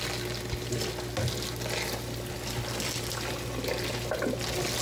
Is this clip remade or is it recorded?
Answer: recorded